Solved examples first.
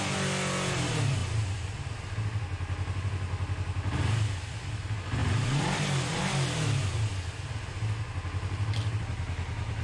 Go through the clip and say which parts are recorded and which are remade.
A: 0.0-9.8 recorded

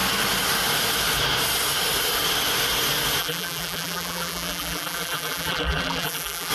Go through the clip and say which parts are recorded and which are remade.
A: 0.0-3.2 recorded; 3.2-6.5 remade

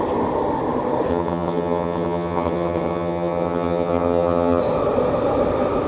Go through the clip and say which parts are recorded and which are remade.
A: 0.0-1.1 recorded; 1.1-4.6 remade; 4.6-5.9 recorded

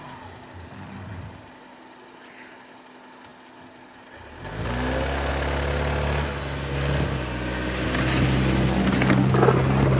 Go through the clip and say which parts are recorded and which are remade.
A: 0.0-10.0 recorded

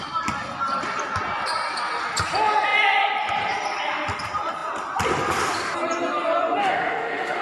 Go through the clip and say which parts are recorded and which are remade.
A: 0.0-6.6 recorded; 6.6-7.4 remade